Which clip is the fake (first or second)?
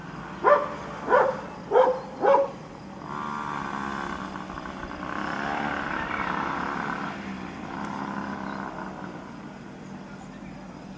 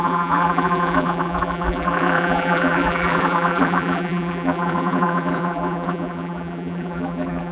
second